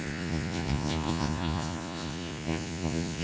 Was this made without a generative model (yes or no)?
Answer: no